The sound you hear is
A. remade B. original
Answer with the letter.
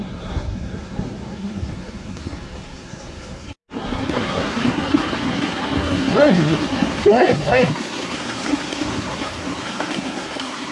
A